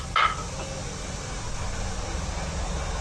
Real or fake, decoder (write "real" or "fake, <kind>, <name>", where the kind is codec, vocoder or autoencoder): real